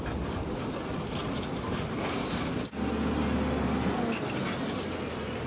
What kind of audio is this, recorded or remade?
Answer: recorded